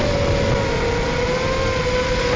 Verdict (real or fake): real